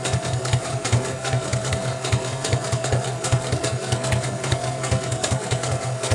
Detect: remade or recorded remade